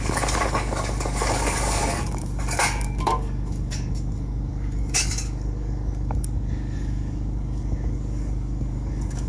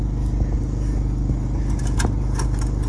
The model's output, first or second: first